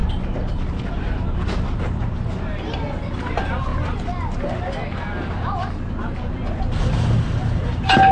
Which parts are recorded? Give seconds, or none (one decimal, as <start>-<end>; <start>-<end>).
0.0-8.1